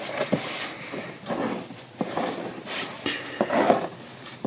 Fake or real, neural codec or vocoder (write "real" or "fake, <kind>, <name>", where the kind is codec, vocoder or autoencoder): real